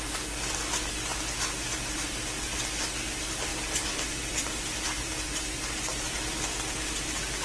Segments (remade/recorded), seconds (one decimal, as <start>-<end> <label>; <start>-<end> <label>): 0.0-7.4 recorded